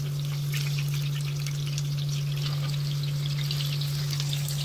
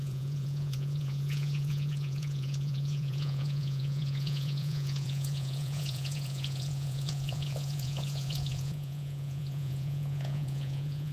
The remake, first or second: second